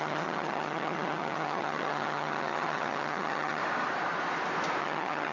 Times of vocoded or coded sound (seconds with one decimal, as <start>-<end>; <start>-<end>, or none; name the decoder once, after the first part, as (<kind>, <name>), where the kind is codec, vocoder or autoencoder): 0.0-3.6 (vocoder, HiFi-GAN); 4.8-5.3